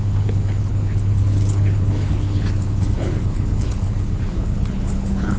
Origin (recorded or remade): remade